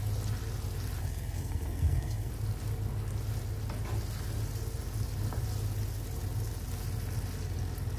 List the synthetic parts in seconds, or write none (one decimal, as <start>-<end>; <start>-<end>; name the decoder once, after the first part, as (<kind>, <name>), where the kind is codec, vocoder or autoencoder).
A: 1.0-2.3 (codec, SNAC)